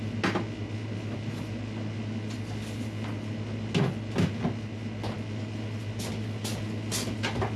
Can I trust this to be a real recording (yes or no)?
yes